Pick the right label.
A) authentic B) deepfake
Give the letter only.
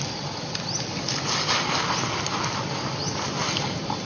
A